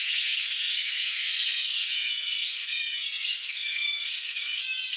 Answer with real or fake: fake